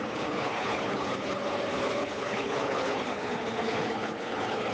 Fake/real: fake